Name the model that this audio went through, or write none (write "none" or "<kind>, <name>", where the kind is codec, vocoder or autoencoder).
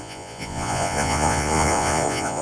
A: vocoder, Vocos